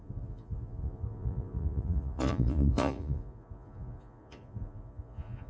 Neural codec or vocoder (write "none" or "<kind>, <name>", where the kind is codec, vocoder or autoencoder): vocoder, Vocos